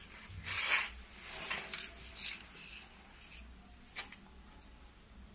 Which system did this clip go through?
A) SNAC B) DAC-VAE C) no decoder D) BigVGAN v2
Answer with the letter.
C